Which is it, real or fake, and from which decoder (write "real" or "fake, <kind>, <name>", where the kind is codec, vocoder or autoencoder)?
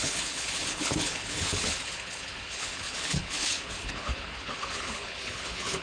fake, codec, HILCodec